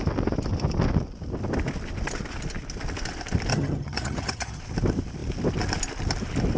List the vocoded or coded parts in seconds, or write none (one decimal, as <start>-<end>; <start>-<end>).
3.5-4.6